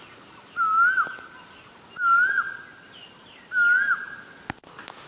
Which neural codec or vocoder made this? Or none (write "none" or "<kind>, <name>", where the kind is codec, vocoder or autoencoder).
none